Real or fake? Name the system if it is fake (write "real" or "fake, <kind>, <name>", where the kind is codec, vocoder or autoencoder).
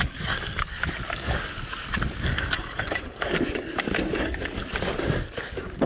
fake, codec, DAC